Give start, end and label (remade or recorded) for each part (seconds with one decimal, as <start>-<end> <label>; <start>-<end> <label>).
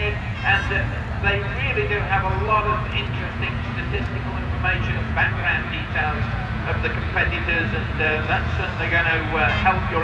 0.0-0.9 remade; 0.9-2.4 recorded; 2.4-10.0 remade